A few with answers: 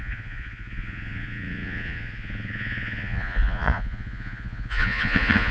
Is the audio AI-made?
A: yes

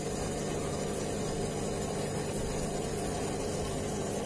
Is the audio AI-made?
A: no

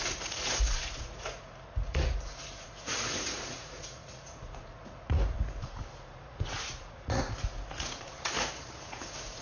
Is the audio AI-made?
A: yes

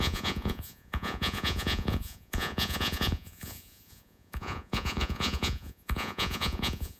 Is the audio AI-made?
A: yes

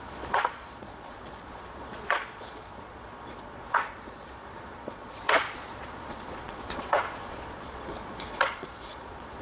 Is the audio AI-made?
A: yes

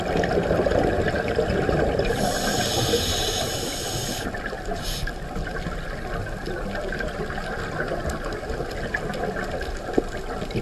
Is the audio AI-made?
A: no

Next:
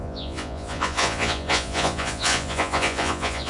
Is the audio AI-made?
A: yes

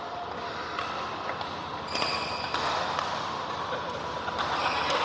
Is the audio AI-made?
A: no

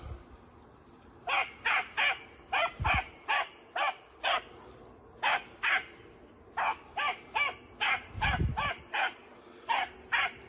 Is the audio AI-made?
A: no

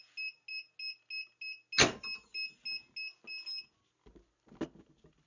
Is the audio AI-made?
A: no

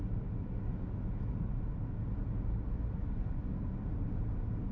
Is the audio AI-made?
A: no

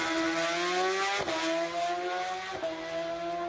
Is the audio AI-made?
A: no